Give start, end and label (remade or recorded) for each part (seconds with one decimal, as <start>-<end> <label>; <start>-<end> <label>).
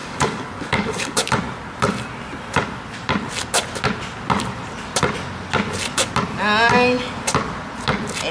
0.0-1.3 remade; 1.3-8.3 recorded